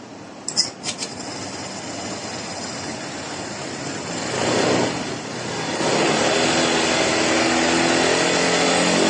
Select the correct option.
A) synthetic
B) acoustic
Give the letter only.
B